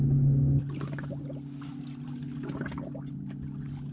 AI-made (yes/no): no